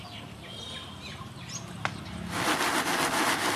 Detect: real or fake real